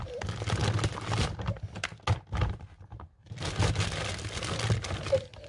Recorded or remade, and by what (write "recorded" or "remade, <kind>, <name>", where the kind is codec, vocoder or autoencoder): recorded